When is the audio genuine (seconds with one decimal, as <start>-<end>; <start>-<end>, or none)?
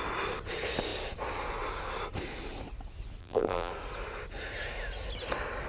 0.0-3.2; 3.7-5.7